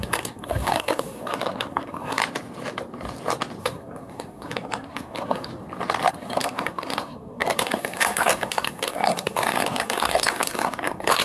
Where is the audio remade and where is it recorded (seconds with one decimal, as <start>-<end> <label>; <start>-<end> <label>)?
0.0-2.2 remade; 2.2-3.6 recorded; 3.6-5.5 remade; 5.5-6.1 recorded; 6.1-11.2 remade